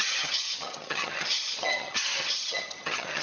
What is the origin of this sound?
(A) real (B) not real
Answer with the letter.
B